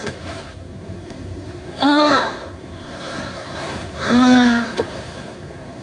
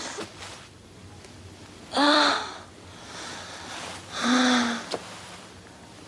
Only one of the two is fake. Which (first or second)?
first